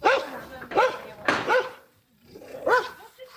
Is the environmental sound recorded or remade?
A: remade